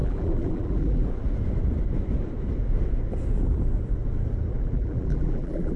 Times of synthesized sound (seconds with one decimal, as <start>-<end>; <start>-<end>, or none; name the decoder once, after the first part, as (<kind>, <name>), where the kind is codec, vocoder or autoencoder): 0.0-1.0 (vocoder, BigVGAN v2); 4.5-5.8